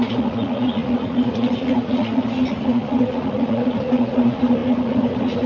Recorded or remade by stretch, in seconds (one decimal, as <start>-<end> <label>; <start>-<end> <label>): 0.0-5.5 remade